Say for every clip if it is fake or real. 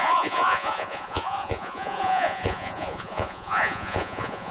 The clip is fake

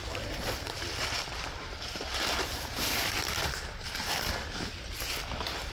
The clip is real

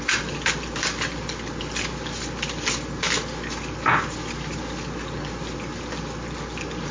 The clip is real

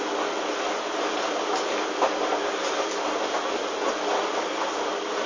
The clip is real